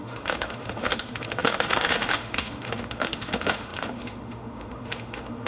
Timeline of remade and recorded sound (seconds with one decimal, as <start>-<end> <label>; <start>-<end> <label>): 0.0-5.5 remade